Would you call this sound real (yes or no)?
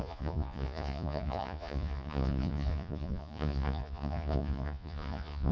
no